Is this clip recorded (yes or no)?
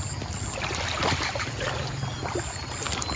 yes